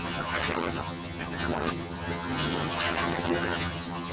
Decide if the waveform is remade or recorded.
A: remade